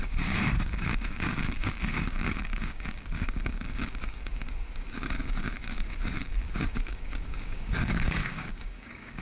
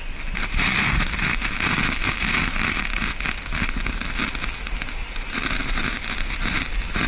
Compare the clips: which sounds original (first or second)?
second